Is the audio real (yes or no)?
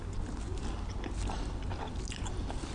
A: yes